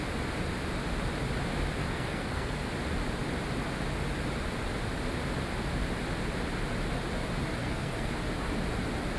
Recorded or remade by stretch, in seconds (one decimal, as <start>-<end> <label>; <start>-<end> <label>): 0.0-1.8 recorded; 1.8-2.7 remade; 2.7-7.6 recorded; 7.6-8.1 remade; 8.1-9.2 recorded